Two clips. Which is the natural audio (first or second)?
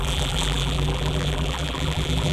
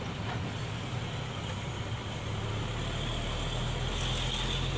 second